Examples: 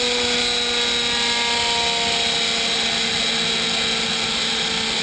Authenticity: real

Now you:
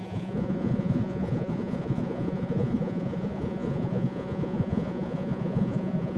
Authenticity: fake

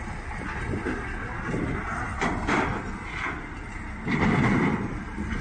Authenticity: real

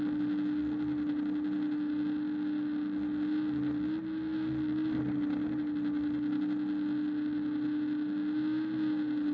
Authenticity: real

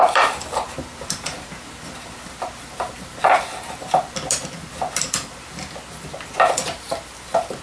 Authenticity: real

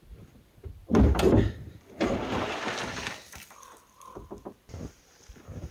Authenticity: real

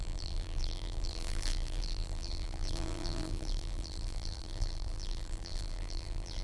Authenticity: fake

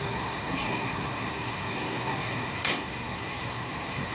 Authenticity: fake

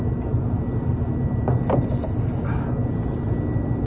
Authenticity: real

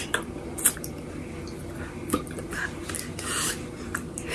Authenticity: real